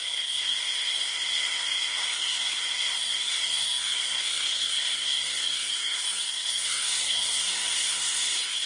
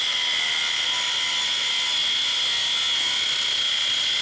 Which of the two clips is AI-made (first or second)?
first